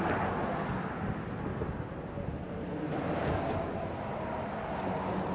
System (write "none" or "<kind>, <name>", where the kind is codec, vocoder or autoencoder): none